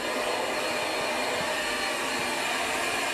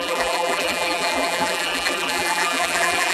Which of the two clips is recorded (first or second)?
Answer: first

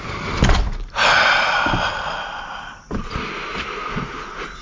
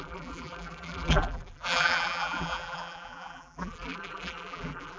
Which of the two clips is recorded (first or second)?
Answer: first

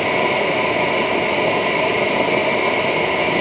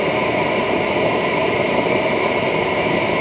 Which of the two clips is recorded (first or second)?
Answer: first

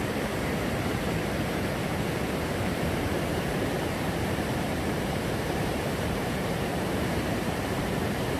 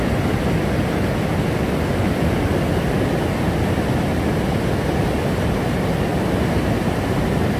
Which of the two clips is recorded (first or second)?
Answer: second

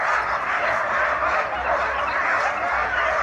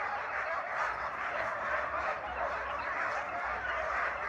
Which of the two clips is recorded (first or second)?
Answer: first